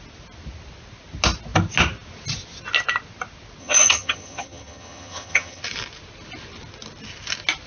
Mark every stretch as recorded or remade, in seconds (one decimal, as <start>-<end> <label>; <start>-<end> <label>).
0.0-3.6 recorded; 3.6-5.6 remade; 5.6-7.7 recorded